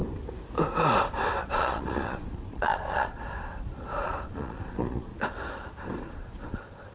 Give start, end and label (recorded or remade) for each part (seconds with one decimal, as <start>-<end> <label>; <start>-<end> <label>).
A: 0.0-1.4 recorded; 1.4-5.1 remade; 5.1-6.0 recorded; 6.0-6.9 remade